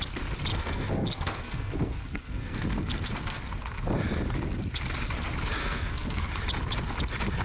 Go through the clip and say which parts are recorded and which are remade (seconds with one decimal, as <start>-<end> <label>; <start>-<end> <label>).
0.0-0.5 recorded; 0.5-3.4 remade; 3.4-5.6 recorded; 5.6-6.3 remade; 6.3-7.4 recorded